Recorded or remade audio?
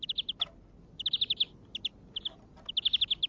recorded